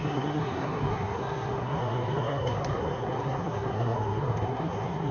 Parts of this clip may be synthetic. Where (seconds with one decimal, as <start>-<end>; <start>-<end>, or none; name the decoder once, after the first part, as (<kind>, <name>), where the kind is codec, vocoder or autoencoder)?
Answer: 0.0-5.1 (codec, SNAC)